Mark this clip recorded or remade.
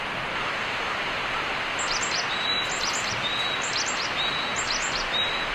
recorded